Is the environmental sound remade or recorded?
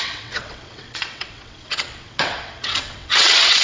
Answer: remade